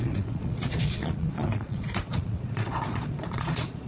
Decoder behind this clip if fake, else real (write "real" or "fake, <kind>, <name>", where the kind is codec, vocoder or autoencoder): fake, vocoder, Vocos